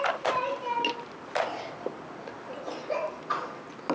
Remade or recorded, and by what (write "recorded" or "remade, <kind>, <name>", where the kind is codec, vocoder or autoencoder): recorded